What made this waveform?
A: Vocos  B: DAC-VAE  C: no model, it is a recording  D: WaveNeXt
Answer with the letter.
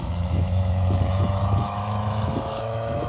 B